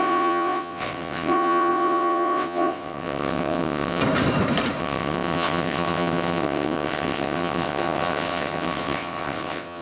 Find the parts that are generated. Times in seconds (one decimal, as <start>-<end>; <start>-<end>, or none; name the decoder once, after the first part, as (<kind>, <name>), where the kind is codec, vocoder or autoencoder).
0.0-4.0 (vocoder, WaveNeXt); 4.8-9.8